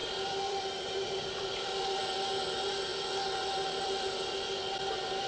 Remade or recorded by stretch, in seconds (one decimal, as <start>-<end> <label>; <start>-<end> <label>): 0.0-2.0 remade; 2.0-2.9 recorded; 2.9-4.3 remade; 4.3-5.3 recorded